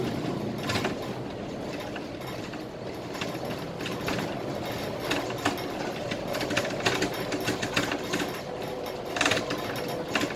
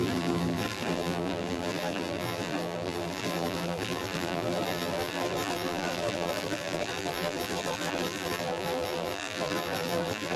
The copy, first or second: second